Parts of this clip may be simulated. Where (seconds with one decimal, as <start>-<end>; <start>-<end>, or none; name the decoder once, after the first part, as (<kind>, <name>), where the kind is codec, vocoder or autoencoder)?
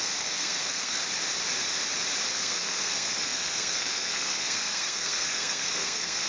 0.0-1.0 (codec, SNAC); 2.3-6.3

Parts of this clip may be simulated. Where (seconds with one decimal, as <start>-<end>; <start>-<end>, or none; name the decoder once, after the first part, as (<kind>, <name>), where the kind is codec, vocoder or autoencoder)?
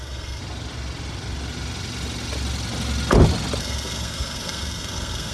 0.0-0.4 (codec, SNAC); 3.6-5.3